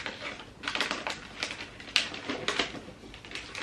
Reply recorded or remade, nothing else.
recorded